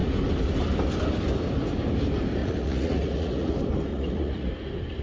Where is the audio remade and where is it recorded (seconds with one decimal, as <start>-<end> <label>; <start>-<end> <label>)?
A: 0.0-2.4 recorded; 2.4-3.5 remade; 3.5-3.9 recorded; 3.9-4.5 remade; 4.5-5.0 recorded